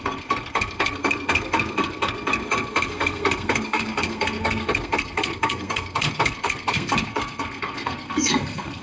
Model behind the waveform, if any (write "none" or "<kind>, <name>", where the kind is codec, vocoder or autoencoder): codec, SNAC